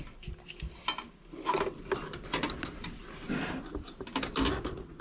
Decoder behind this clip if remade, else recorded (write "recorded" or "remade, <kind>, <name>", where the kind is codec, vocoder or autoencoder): recorded